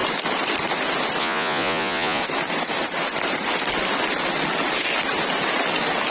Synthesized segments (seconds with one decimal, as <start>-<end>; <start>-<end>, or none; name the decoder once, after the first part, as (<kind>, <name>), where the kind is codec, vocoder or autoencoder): 1.2-2.2 (vocoder, Vocos)